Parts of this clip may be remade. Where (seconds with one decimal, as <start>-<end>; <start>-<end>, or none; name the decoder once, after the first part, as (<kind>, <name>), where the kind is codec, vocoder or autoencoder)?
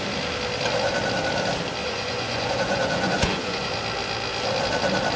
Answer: 1.8-3.7 (vocoder, Vocos)